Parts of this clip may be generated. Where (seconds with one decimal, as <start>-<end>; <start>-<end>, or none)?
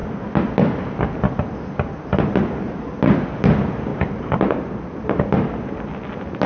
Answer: 3.9-5.9